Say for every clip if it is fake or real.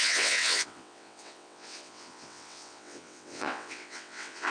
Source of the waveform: fake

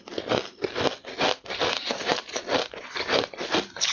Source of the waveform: real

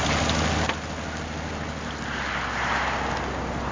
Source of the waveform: real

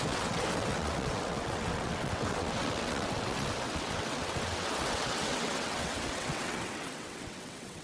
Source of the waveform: fake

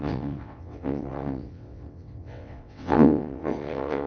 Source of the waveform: fake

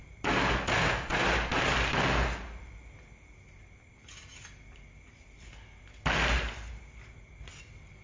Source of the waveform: real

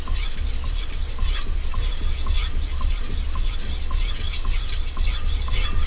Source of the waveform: real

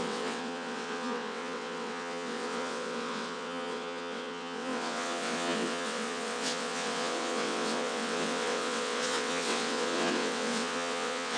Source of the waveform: fake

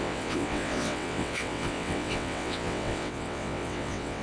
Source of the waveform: fake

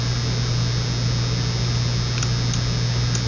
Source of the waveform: real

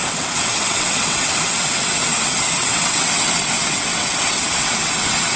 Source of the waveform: fake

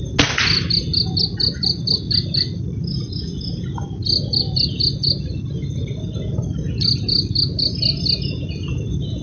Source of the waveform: real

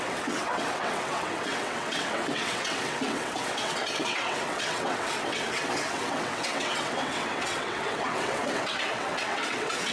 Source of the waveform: fake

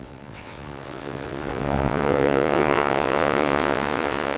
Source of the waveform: fake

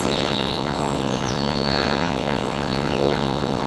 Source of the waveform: fake